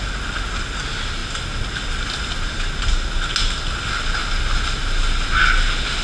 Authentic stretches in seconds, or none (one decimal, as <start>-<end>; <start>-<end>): 0.0-6.0

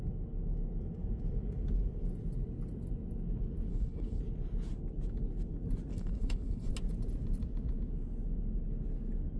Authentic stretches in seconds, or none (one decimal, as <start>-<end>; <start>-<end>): 0.0-3.7; 4.2-5.9; 6.7-9.4

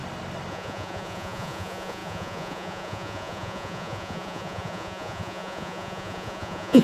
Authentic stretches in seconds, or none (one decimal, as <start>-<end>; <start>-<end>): 0.0-0.5

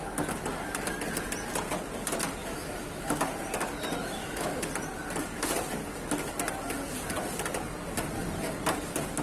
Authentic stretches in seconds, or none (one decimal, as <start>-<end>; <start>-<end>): 0.0-2.4; 3.2-4.0; 4.6-9.2

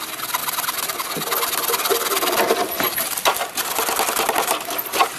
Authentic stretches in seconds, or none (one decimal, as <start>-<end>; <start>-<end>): 0.0-5.2

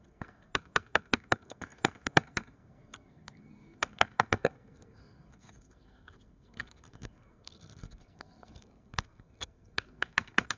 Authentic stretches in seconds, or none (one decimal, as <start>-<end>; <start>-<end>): none

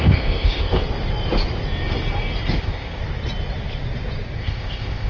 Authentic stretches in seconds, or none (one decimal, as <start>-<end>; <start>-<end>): 0.8-2.6; 3.0-4.4

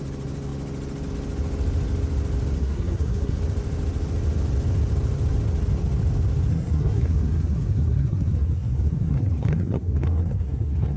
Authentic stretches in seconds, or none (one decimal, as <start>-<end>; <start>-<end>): 0.0-2.6; 3.4-6.5